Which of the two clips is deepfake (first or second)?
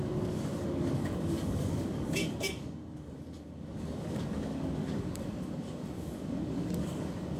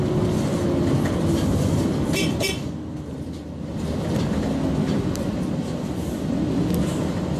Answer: first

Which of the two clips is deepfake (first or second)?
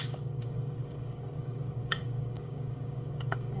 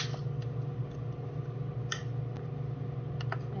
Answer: first